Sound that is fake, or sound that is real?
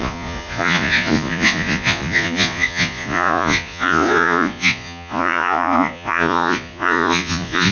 fake